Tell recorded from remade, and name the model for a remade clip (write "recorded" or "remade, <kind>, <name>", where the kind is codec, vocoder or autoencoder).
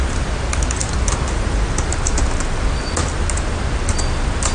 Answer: recorded